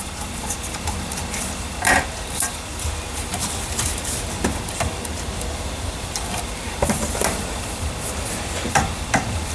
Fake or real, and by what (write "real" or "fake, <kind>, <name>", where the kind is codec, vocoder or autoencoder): fake, vocoder, BigVGAN v2